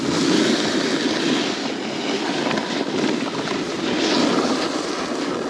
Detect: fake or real real